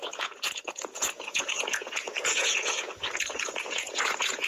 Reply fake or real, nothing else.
fake